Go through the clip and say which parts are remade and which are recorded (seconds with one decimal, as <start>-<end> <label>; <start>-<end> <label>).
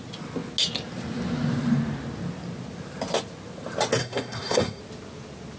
0.0-4.0 recorded; 4.0-4.8 remade; 4.8-5.6 recorded